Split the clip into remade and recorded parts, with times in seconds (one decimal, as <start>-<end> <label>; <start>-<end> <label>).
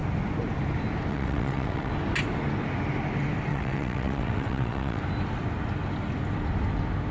0.0-1.1 recorded; 1.1-1.9 remade; 1.9-3.5 recorded; 3.5-5.0 remade; 5.0-7.1 recorded